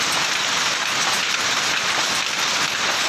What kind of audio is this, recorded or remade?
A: recorded